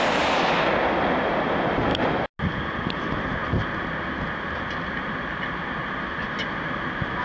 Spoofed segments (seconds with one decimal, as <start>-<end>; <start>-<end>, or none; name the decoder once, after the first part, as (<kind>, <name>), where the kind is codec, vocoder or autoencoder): none